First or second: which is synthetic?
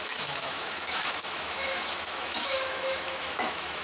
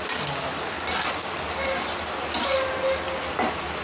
first